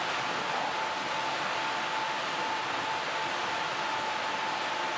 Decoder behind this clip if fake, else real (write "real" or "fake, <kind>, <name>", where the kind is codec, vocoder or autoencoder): real